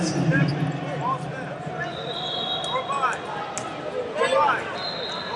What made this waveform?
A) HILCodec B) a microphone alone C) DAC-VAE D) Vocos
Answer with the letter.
B